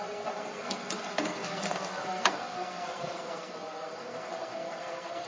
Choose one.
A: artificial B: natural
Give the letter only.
A